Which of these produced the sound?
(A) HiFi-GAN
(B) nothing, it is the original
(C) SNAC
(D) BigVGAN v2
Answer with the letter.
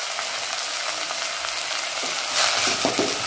B